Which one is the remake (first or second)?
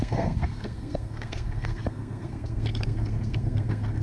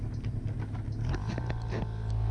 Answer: first